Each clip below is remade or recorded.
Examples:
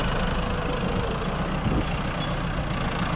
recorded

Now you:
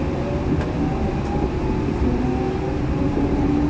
recorded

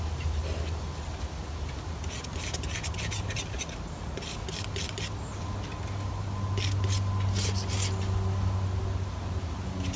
recorded